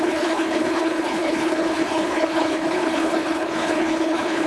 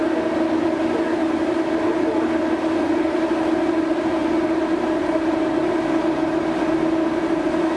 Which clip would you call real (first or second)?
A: second